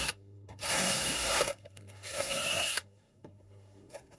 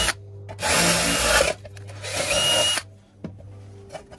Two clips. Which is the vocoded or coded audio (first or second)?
first